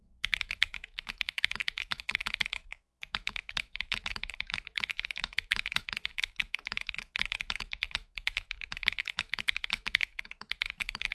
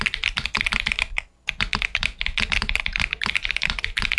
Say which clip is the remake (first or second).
first